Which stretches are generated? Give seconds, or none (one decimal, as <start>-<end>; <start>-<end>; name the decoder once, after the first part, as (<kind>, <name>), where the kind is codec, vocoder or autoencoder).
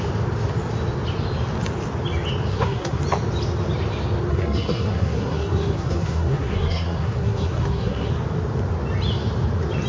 2.5-3.0 (codec, SNAC); 4.3-8.1